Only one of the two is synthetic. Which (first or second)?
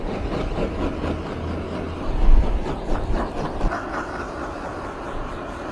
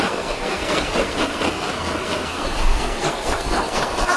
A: second